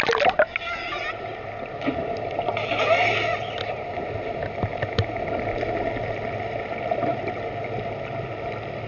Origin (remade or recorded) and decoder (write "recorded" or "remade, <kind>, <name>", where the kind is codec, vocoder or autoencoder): recorded